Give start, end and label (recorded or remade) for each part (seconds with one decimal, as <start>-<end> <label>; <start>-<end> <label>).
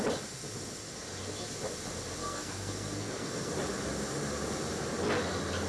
0.0-2.2 recorded; 2.2-3.5 remade; 3.5-5.7 recorded